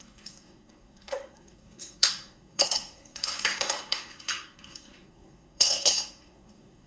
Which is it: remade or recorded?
remade